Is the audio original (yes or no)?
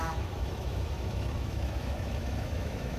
no